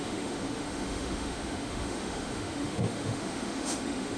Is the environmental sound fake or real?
fake